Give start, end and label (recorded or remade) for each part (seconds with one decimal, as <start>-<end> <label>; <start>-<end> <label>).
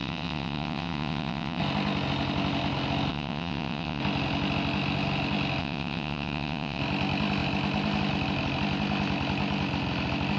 0.0-1.6 remade; 1.6-3.1 recorded; 3.1-4.0 remade; 4.0-5.6 recorded; 5.6-6.8 remade; 6.8-10.4 recorded